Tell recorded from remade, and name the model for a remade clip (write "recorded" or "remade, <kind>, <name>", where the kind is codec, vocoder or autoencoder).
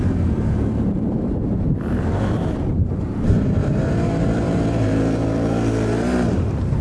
remade, vocoder, BigVGAN v2